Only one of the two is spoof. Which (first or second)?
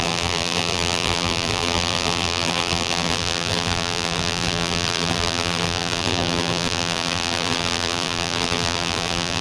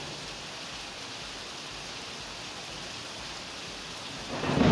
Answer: first